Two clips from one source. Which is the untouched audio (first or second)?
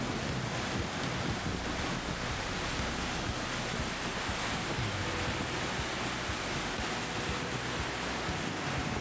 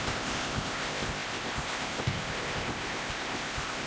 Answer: first